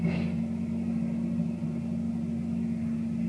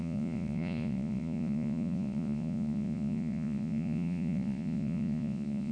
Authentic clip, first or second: first